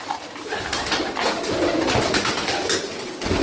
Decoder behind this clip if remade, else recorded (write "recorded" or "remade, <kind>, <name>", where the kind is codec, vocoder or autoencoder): recorded